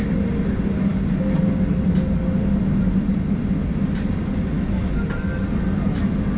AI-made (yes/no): no